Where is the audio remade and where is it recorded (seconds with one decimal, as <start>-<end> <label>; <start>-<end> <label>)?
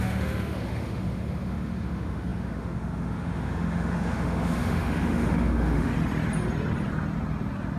0.0-5.9 remade; 5.9-7.8 recorded